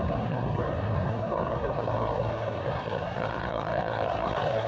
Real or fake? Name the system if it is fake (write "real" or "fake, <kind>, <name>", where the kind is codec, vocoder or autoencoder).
fake, codec, SNAC